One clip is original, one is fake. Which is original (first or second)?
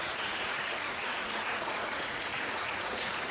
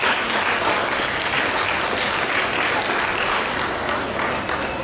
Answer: second